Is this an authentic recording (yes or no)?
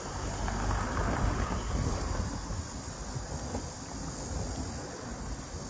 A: yes